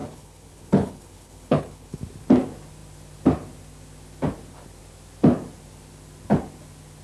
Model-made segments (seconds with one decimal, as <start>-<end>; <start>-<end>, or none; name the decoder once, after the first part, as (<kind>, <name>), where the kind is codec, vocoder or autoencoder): 0.0-2.0 (codec, HILCodec)